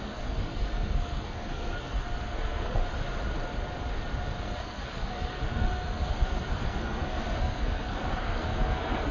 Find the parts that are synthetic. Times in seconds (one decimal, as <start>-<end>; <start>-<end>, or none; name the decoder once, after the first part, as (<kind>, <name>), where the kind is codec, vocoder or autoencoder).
0.0-2.8 (codec, SNAC); 4.4-9.1